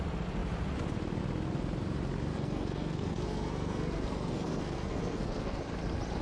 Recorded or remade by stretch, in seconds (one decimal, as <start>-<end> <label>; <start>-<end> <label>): 0.0-2.3 recorded; 2.3-5.6 remade; 5.6-6.2 recorded